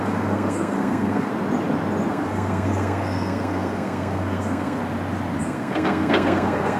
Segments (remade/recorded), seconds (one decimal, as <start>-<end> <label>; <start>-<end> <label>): 0.0-1.3 remade; 1.3-2.1 recorded; 2.1-4.8 remade; 4.8-5.4 recorded; 5.4-6.8 remade